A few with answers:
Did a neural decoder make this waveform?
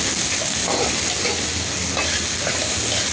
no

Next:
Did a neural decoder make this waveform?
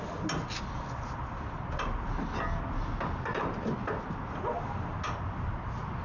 no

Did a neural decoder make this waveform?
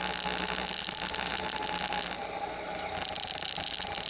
no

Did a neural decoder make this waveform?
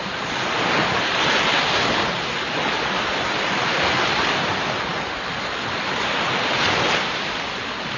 no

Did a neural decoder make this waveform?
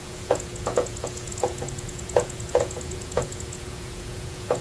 yes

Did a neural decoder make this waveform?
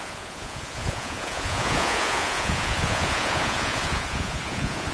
yes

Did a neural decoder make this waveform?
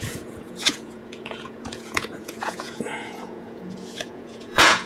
yes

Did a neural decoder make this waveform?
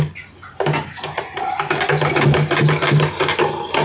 no